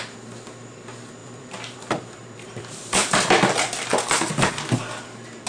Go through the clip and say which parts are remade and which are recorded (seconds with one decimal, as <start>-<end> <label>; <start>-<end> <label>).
0.0-1.2 recorded; 1.2-4.5 remade; 4.5-5.5 recorded